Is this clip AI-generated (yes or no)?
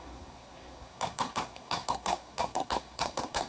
yes